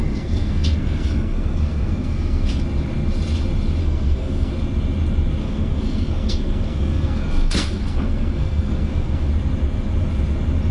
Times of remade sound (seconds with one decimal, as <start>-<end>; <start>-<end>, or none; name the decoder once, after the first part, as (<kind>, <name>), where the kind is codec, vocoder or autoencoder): 0.0-2.6 (codec, SNAC); 3.8-4.5; 5.4-9.3